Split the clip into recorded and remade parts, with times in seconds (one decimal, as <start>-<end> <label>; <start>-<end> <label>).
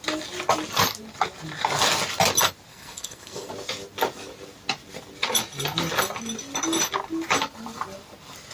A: 0.0-2.7 recorded; 2.7-3.5 remade; 3.5-8.5 recorded